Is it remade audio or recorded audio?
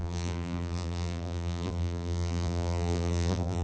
remade